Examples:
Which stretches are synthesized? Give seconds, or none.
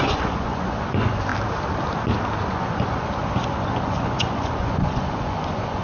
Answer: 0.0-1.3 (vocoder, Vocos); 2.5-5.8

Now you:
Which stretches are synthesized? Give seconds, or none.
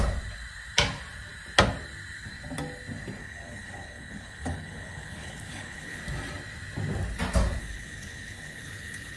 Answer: 3.2-6.0 (codec, HILCodec); 7.6-9.2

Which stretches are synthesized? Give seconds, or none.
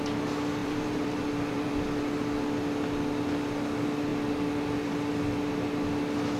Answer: 0.6-1.7 (vocoder, BigVGAN v2)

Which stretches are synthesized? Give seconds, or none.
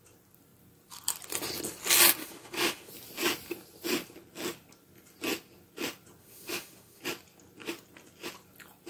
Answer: 2.2-2.9 (autoencoder, DAC-VAE); 6.2-7.0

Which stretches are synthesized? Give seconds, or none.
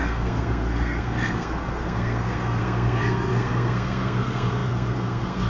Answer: 0.0-5.5 (codec, SNAC)